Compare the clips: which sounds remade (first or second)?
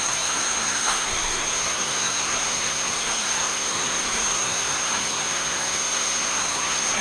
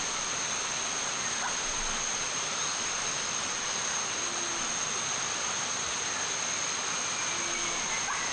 first